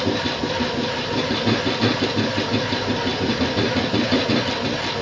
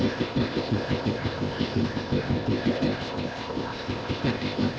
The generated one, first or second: second